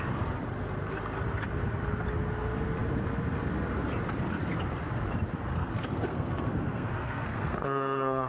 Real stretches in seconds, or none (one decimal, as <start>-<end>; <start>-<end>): 0.0-5.5